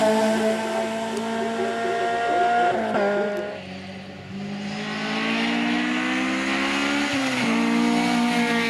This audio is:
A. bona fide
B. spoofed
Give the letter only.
A